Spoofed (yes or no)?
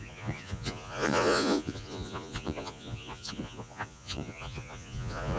yes